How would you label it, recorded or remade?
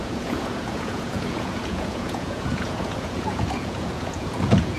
remade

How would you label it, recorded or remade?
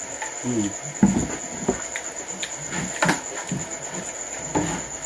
recorded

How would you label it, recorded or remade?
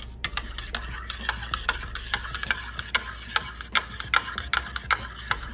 recorded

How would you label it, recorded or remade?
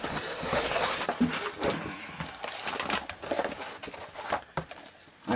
recorded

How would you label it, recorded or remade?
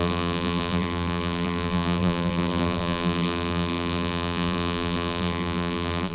remade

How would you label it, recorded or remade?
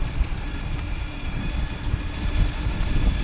remade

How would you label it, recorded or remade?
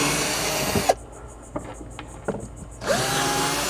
recorded